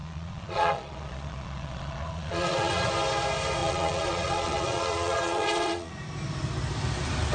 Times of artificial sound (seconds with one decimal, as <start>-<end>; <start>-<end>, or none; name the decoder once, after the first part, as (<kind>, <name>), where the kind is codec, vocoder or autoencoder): 0.0-2.9 (vocoder, Vocos); 3.6-5.9